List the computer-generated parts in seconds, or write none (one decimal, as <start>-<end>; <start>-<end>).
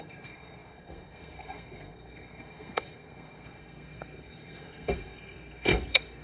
0.0-6.2